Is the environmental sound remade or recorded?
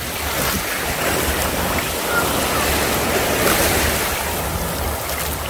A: recorded